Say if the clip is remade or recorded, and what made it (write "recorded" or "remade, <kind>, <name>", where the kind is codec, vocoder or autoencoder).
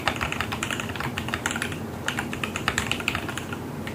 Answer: remade, vocoder, BigVGAN v2